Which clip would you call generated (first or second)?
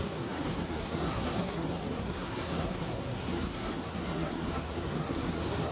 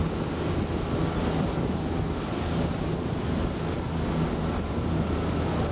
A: first